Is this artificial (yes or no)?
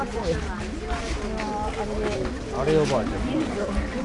no